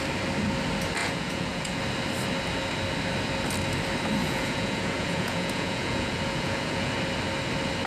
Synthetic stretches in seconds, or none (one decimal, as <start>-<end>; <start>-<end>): 1.0-1.8; 4.2-6.9